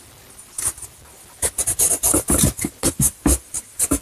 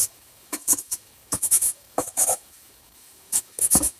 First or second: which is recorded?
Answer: first